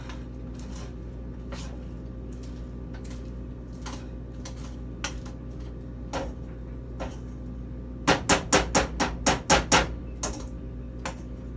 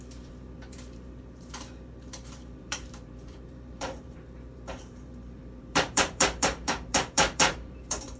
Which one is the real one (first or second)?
first